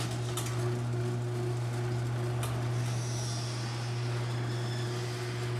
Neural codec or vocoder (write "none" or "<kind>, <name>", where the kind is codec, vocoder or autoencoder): none